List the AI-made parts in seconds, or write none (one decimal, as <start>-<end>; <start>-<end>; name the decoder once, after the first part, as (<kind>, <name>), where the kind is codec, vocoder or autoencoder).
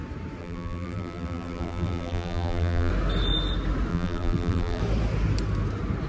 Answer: 0.4-2.9 (vocoder, BigVGAN v2); 3.9-4.8